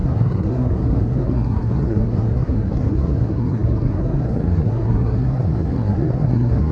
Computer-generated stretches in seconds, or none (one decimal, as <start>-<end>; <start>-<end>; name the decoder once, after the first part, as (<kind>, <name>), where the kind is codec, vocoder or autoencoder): 0.0-6.7 (codec, SNAC)

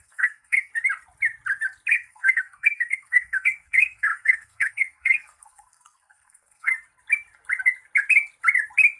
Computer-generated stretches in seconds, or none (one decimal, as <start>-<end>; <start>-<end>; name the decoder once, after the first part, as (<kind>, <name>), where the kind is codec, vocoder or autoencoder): 0.0-0.7 (codec, SNAC); 1.9-6.7

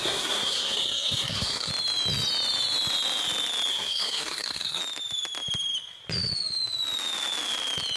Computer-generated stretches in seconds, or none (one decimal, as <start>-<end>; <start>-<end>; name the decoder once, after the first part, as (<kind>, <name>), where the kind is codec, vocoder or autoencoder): 0.0-1.7 (codec, SNAC); 3.7-4.8

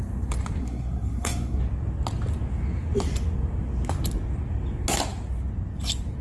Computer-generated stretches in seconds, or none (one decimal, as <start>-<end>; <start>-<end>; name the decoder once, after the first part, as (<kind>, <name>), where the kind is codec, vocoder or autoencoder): 0.6-1.6 (codec, SNAC)